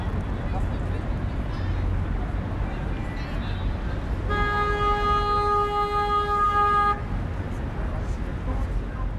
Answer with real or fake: real